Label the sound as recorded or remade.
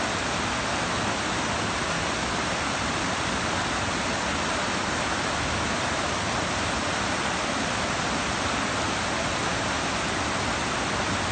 recorded